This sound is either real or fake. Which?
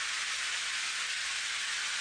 real